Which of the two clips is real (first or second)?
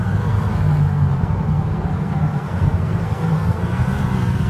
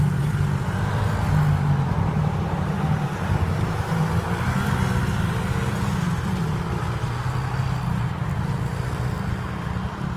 second